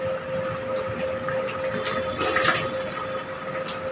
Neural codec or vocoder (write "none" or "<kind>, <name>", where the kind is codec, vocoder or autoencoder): none